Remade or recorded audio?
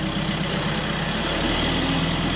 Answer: recorded